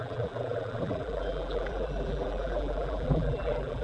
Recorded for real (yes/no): no